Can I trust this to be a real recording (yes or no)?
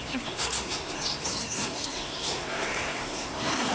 no